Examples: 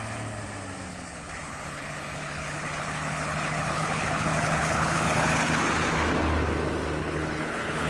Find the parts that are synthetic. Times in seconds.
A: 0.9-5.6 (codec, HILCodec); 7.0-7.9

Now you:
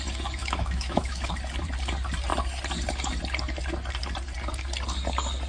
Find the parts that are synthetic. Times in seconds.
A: 0.4-1.3 (autoencoder, DAC-VAE)

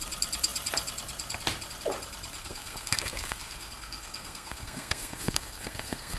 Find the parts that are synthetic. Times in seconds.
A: 2.4-6.2 (codec, SNAC)